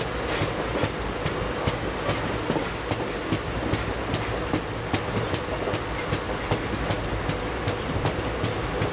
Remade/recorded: recorded